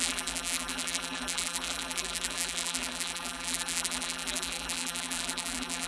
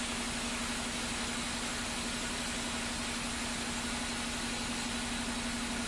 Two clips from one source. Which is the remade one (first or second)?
first